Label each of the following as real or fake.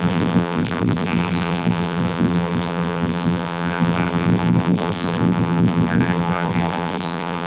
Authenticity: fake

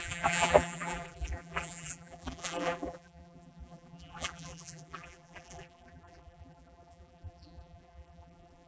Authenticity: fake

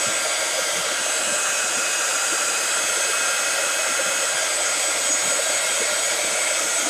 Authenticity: real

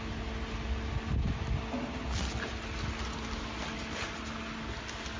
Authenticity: real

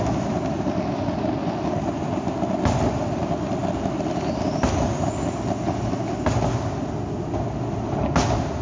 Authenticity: real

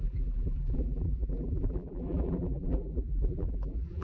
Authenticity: fake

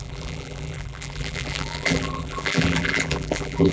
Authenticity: fake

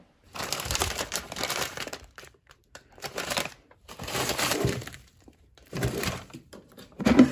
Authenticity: fake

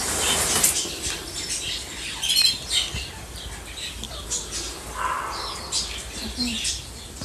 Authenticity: real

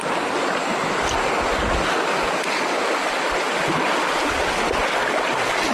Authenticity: real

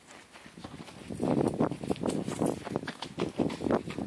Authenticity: real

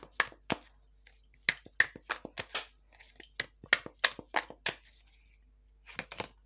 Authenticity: real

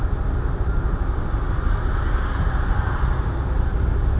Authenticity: real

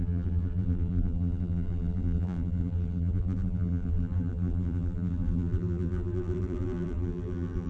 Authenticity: fake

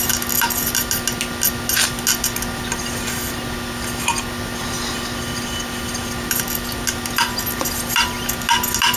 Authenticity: real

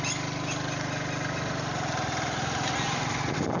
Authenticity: real